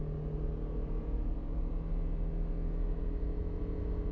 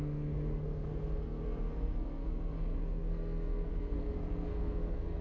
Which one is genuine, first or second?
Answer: first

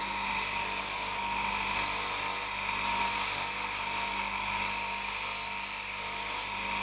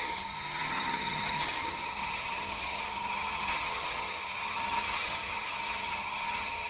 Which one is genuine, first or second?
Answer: first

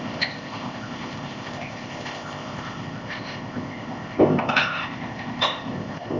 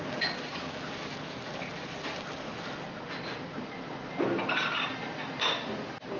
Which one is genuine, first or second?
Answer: second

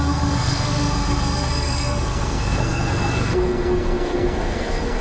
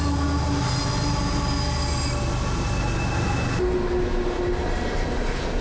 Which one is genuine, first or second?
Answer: second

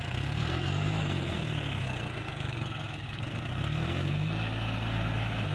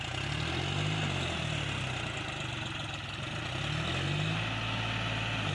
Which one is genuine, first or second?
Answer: second